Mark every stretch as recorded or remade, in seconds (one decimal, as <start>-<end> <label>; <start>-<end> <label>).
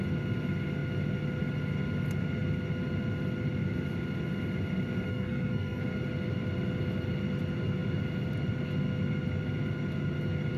0.0-5.1 recorded; 5.1-5.8 remade; 5.8-10.6 recorded